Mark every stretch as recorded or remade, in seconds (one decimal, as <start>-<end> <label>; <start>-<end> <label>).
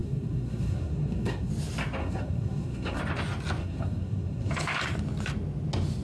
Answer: 0.0-1.5 remade; 1.5-2.0 recorded; 2.0-3.0 remade; 3.0-3.6 recorded; 3.6-4.5 remade; 4.5-6.0 recorded